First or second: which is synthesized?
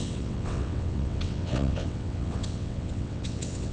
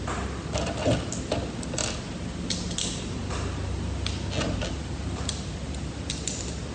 first